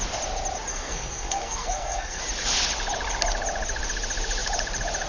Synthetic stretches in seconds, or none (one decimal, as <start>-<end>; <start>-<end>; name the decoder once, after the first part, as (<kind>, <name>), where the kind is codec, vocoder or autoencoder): 0.7-2.2 (codec, SNAC)